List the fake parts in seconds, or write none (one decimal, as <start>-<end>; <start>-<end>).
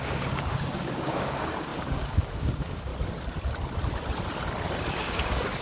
0.0-2.9; 4.9-5.6